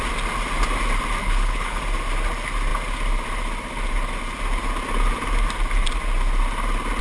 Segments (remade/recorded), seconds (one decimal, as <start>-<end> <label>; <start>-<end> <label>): 0.0-1.2 recorded; 1.2-1.8 remade; 1.8-7.0 recorded